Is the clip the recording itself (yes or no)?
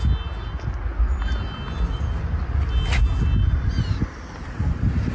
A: yes